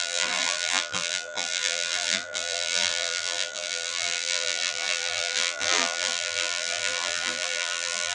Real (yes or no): no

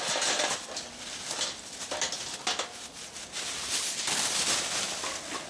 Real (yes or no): yes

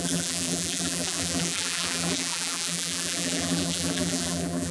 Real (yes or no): no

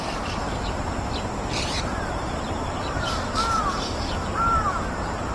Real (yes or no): no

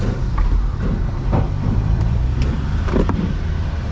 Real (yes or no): no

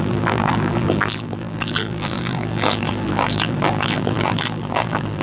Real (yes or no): no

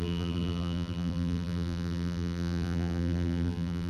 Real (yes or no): no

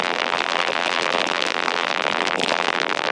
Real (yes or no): no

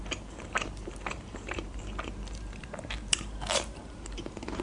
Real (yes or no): no